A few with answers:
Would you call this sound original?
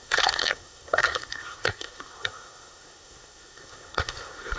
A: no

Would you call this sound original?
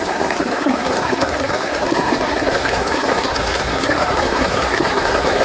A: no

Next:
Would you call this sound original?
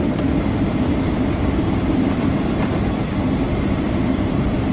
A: no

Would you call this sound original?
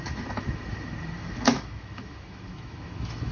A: no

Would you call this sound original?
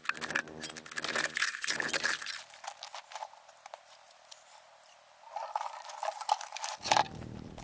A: yes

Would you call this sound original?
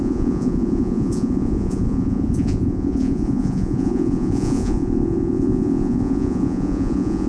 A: no